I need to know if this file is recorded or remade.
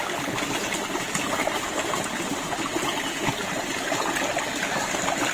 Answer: recorded